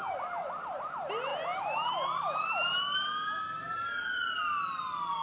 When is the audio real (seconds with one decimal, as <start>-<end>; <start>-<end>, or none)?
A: 0.0-5.2